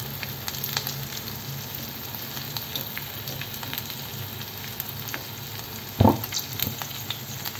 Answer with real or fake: real